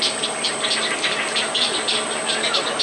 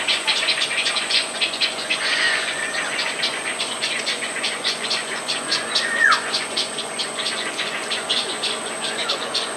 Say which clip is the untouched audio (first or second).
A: first